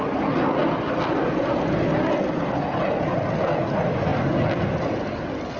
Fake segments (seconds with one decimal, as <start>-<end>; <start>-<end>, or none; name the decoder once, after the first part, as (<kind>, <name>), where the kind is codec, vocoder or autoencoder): none